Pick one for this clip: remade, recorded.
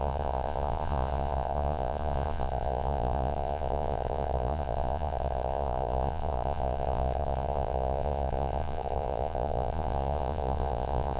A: remade